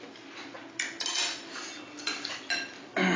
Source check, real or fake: real